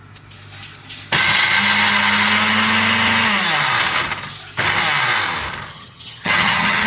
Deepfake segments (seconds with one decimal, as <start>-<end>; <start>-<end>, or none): 5.7-6.9